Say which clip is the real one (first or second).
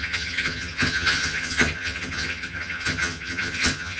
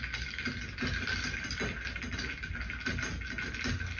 second